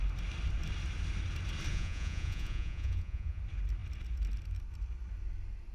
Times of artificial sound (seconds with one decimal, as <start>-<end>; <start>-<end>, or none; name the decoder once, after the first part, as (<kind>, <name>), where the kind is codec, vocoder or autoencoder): 1.7-3.4 (vocoder, Vocos)